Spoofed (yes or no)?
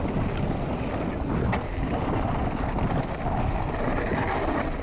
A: no